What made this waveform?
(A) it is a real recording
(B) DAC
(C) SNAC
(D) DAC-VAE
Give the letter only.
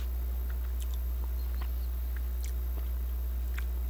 A